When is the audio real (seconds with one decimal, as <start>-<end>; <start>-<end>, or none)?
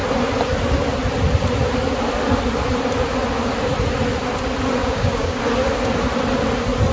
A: 0.0-4.8; 5.4-6.9